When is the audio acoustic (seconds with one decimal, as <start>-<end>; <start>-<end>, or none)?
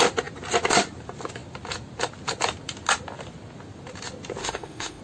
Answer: 0.0-4.4